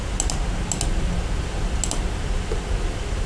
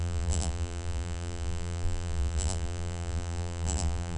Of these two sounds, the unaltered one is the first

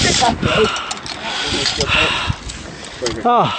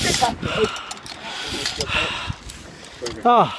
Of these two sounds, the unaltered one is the first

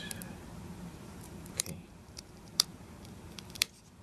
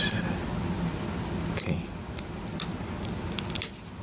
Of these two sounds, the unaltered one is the second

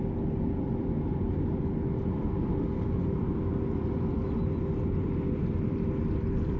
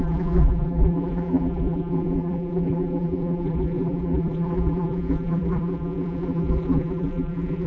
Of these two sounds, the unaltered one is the first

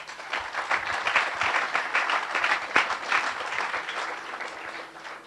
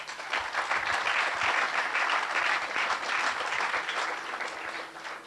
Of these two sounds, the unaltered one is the second